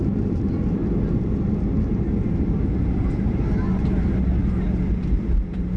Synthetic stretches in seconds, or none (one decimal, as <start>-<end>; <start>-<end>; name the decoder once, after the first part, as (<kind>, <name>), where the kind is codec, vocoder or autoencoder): 0.0-0.8 (vocoder, BigVGAN v2); 2.3-4.4; 5.2-5.8